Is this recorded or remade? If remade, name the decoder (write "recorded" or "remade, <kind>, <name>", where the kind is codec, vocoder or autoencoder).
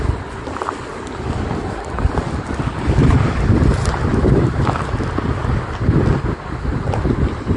recorded